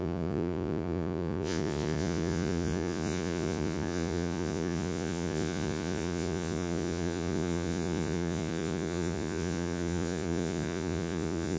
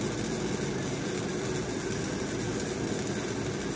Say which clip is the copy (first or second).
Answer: first